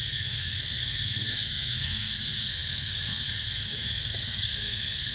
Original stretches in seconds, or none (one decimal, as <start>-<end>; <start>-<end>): none